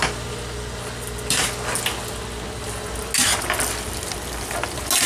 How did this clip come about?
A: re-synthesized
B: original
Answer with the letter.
B